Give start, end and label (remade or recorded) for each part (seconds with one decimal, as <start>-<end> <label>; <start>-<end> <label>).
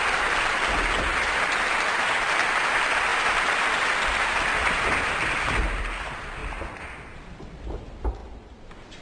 0.0-6.4 remade; 6.4-7.1 recorded; 7.1-9.0 remade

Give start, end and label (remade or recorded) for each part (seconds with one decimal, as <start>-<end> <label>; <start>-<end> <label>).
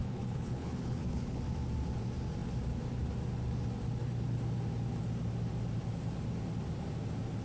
0.0-1.4 remade; 1.4-7.4 recorded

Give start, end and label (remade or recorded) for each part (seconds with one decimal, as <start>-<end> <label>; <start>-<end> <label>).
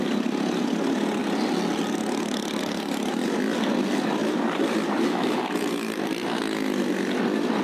0.0-4.2 recorded; 4.2-6.0 remade; 6.0-7.6 recorded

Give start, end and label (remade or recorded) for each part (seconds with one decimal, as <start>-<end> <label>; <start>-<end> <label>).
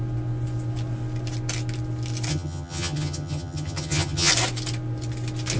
0.0-2.3 recorded; 2.3-4.3 remade; 4.3-5.6 recorded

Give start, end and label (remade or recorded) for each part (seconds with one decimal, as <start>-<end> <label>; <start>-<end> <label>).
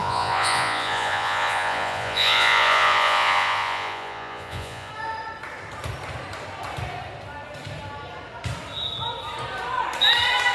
0.0-4.9 remade; 4.9-10.5 recorded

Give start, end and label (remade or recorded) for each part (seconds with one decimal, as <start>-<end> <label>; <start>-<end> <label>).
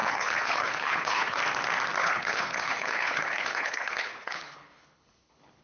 0.0-1.4 remade; 1.4-2.0 recorded; 2.0-5.6 remade